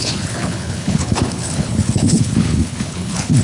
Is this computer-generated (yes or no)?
yes